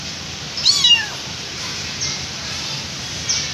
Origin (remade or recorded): recorded